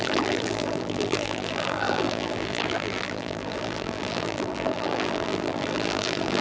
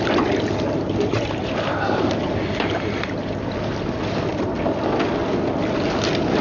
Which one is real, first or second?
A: second